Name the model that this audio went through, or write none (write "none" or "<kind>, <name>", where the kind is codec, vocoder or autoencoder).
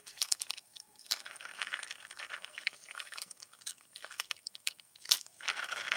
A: codec, SNAC